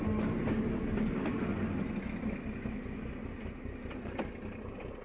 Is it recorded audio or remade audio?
recorded